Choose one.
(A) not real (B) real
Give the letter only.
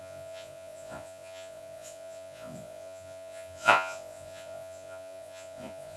A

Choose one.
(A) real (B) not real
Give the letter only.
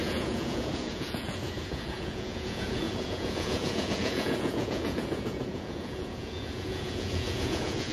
B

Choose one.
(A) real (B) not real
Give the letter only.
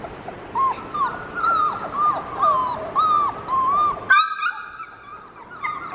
A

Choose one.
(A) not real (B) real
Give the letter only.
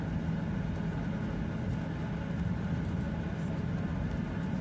B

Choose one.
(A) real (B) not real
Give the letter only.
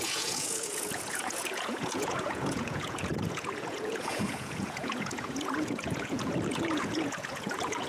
B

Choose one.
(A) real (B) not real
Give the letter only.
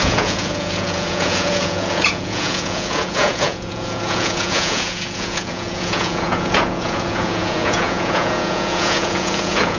B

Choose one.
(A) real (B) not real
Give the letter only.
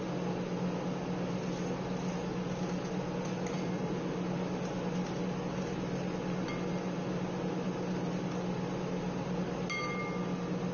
A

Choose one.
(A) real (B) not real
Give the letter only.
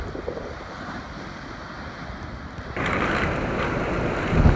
A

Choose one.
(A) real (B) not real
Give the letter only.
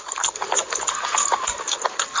A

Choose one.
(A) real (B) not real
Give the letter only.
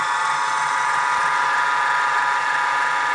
A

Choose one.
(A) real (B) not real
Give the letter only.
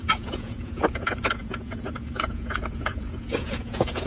B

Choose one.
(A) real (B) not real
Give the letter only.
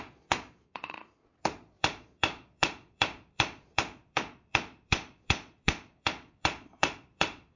B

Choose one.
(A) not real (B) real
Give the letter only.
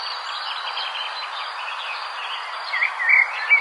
B